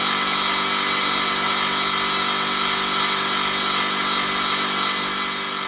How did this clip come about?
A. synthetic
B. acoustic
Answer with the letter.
B